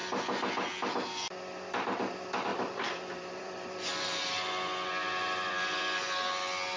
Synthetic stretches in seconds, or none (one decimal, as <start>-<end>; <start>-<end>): 2.5-4.3; 5.0-5.8